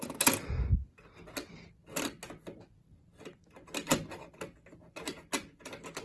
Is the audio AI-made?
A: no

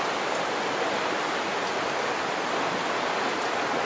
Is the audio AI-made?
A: no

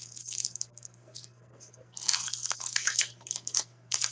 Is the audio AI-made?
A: yes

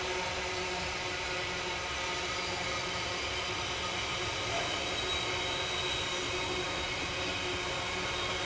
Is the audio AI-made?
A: no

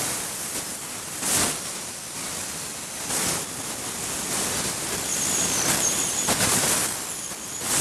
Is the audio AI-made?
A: no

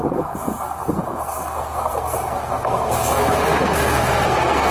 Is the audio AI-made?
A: yes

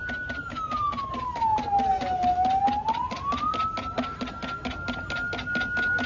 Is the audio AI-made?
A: no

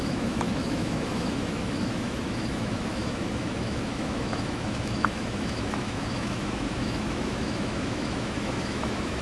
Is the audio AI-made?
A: yes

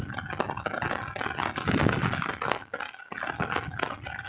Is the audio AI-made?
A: no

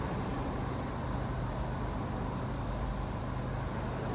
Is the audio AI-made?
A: no